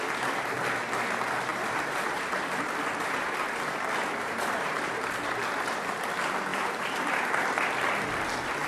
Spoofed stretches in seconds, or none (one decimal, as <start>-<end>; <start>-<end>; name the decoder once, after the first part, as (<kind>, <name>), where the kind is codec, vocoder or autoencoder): 1.5-3.8 (vocoder, BigVGAN v2); 4.2-4.9; 6.5-7.3